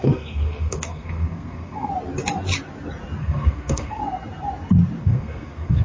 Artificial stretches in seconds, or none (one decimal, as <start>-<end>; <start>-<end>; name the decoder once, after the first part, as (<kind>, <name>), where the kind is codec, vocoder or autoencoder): 0.0-1.9 (codec, SNAC); 3.2-4.0; 5.0-5.8